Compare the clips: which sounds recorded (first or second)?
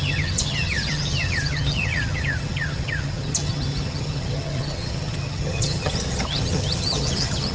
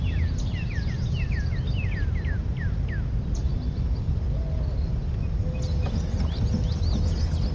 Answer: second